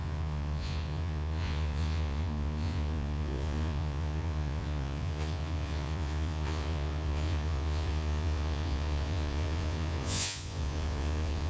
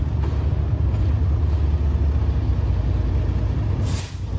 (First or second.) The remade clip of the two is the first